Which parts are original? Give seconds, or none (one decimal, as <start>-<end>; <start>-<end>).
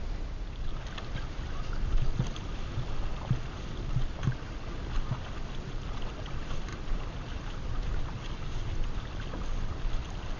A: 0.0-10.4